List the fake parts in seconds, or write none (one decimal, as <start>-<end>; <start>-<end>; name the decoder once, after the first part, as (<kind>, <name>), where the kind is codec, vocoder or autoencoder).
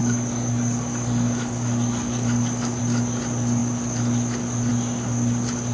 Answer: 0.0-2.8 (codec, DAC)